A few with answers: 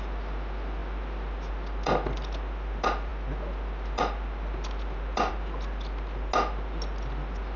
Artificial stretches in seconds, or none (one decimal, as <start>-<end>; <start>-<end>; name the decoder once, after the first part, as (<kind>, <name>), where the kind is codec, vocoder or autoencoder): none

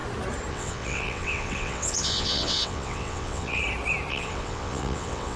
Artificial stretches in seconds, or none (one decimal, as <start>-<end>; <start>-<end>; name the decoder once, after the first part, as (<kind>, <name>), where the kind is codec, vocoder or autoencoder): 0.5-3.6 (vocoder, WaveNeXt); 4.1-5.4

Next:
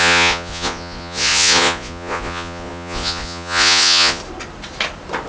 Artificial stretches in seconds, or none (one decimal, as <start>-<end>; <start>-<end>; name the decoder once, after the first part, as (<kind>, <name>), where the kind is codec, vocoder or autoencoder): 0.0-4.2 (vocoder, Vocos)

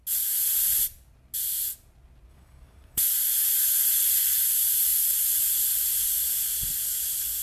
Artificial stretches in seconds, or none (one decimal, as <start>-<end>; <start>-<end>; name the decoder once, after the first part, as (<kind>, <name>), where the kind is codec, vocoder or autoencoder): 2.3-3.0 (codec, DAC)